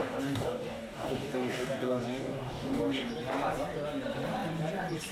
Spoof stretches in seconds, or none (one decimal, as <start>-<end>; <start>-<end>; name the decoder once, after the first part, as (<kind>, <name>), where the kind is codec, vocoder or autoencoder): 0.0-3.1 (codec, DAC)